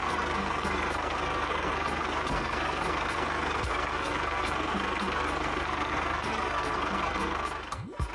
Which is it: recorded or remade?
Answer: remade